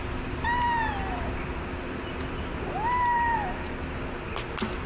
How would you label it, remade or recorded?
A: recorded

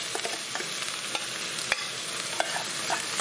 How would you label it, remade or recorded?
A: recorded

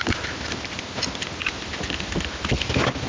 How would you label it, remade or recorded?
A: recorded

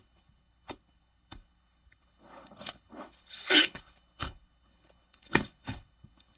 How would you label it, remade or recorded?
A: remade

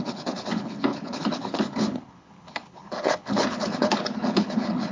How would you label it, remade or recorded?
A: remade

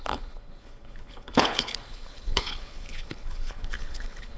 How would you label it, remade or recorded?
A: remade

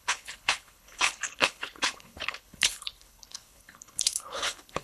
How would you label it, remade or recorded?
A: remade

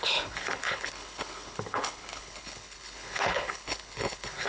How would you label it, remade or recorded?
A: remade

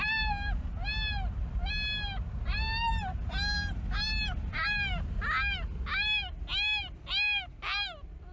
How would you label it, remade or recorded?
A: recorded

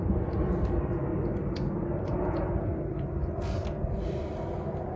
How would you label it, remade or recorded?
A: recorded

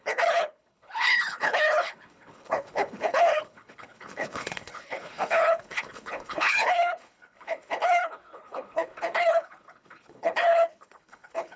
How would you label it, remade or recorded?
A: remade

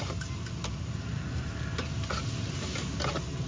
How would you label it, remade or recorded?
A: recorded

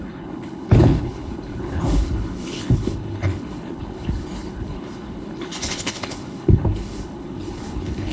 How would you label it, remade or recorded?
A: remade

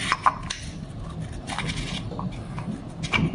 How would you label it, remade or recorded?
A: recorded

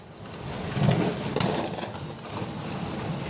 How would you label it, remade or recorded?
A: recorded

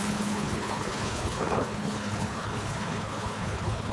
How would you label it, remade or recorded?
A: remade